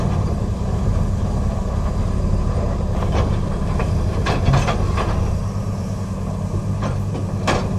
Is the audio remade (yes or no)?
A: yes